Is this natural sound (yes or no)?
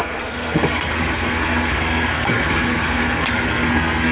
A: no